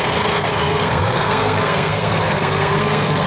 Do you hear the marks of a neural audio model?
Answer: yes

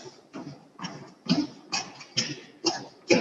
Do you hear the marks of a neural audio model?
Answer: no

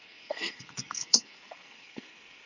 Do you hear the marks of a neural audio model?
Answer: yes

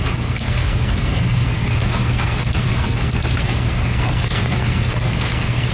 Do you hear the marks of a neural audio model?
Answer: yes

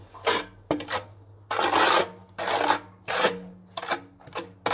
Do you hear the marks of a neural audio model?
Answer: no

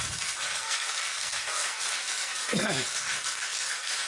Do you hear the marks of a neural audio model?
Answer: yes